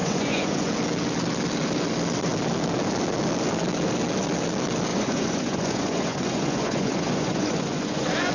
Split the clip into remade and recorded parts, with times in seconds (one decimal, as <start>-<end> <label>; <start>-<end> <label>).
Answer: 0.0-0.7 remade; 0.7-4.9 recorded; 4.9-8.3 remade